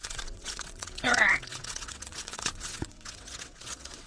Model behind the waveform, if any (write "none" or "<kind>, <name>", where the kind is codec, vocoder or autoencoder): vocoder, WaveNeXt